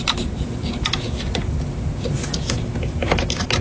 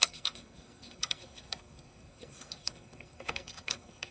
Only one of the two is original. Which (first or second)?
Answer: first